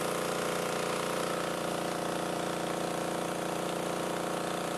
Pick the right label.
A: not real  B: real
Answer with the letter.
A